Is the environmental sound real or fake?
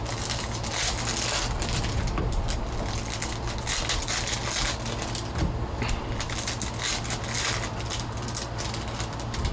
real